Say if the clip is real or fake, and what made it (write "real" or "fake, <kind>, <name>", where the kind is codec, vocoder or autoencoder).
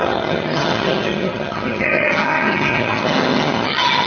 fake, vocoder, HiFi-GAN